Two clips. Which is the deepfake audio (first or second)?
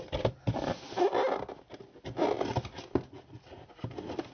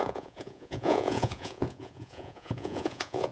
second